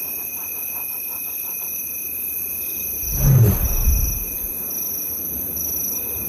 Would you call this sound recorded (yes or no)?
no